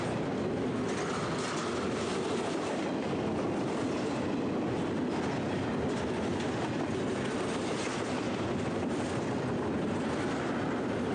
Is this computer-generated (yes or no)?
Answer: no